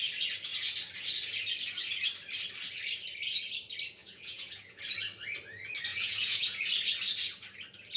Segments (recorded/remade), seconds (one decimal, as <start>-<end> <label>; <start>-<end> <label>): 0.0-4.0 recorded; 4.0-4.8 remade; 4.8-5.9 recorded; 5.9-6.7 remade; 6.7-8.0 recorded